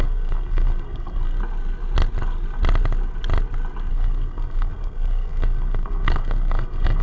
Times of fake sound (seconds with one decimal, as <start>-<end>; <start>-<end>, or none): 0.0-1.4; 3.9-7.0